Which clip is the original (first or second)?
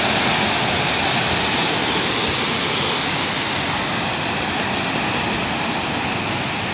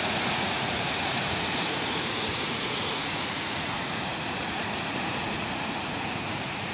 first